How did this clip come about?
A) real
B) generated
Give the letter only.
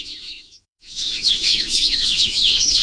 B